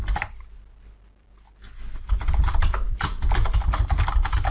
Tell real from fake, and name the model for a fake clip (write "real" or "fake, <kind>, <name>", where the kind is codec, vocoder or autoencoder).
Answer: fake, vocoder, BigVGAN v2